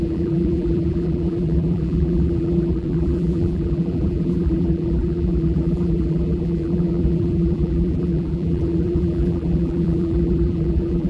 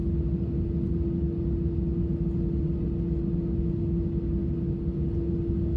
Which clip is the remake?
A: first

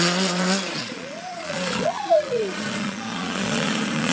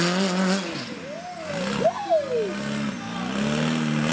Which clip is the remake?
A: first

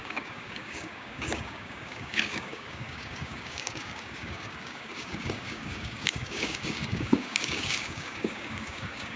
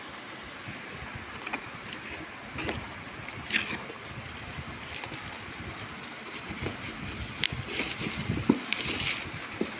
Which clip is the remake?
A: first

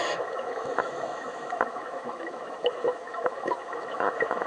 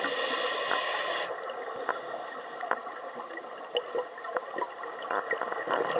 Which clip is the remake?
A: first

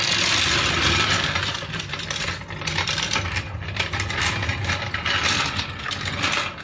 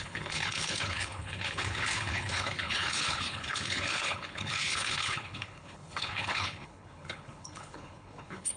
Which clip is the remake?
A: second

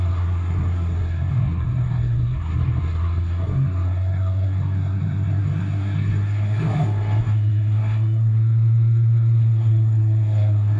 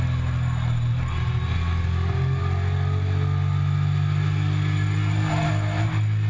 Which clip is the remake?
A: first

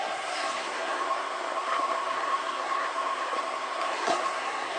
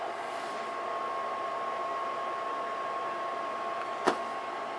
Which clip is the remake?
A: first